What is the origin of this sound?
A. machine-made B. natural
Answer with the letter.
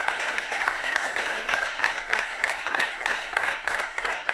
A